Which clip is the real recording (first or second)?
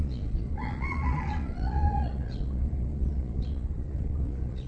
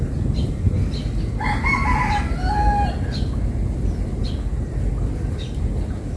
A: second